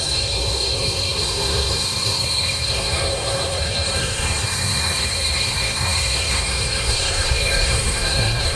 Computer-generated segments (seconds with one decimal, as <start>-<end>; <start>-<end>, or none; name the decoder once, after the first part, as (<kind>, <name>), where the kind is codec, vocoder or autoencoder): 0.0-8.6 (codec, SNAC)